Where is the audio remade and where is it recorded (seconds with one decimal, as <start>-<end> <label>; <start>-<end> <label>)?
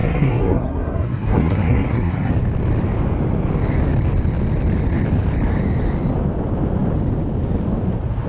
0.0-2.3 remade; 2.3-8.3 recorded